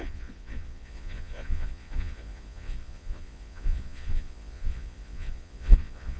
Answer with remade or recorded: remade